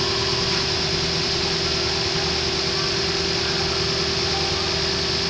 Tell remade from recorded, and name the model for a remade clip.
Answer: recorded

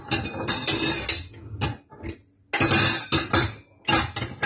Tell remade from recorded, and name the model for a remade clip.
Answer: recorded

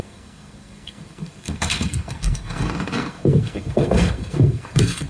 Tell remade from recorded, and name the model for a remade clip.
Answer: remade, codec, SNAC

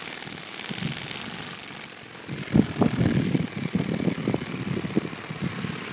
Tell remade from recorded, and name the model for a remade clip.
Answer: recorded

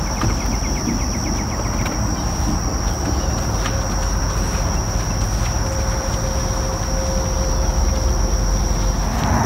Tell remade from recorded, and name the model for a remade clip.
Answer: recorded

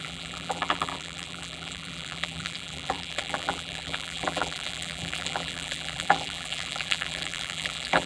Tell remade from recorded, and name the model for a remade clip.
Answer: remade, vocoder, BigVGAN v2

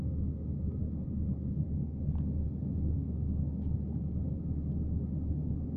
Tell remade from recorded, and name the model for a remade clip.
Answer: recorded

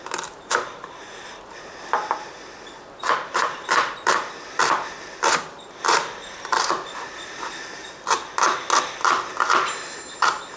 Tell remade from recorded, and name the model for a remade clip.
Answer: recorded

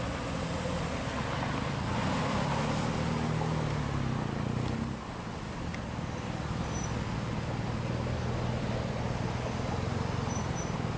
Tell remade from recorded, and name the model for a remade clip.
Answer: recorded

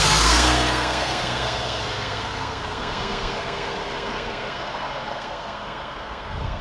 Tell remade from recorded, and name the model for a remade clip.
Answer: remade, codec, SNAC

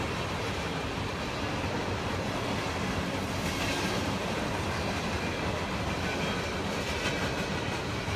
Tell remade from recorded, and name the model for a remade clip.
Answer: recorded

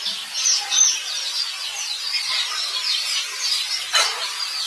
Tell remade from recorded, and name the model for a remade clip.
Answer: recorded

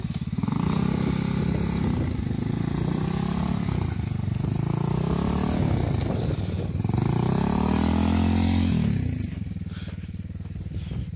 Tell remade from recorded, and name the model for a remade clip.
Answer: recorded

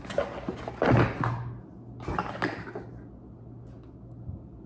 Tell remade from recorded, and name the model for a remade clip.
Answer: recorded